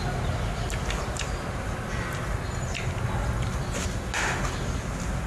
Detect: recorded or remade recorded